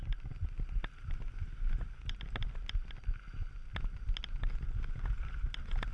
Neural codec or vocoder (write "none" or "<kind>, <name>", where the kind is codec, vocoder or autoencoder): none